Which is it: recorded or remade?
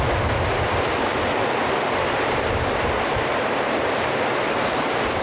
recorded